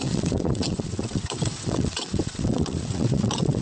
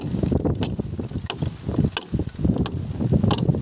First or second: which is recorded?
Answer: second